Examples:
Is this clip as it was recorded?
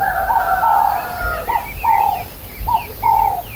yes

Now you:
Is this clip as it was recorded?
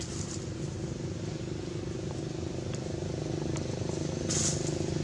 yes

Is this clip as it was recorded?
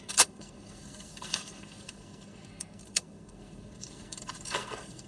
no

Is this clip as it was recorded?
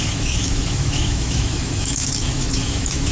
no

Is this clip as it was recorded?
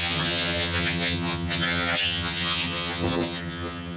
no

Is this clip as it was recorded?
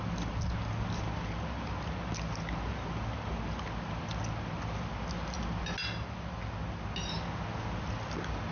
yes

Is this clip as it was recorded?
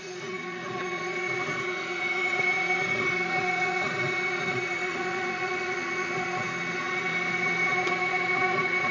no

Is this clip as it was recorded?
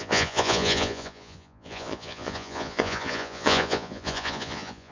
no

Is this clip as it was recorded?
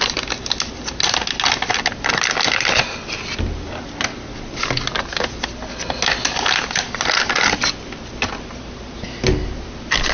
yes